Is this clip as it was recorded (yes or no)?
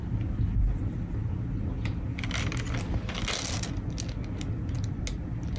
yes